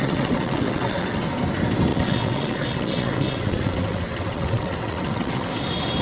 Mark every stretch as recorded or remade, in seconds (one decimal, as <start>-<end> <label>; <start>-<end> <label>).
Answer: 0.0-1.2 remade; 1.2-1.9 recorded; 1.9-5.5 remade; 5.5-6.0 recorded